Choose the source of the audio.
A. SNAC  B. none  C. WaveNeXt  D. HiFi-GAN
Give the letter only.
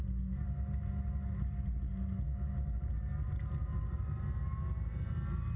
B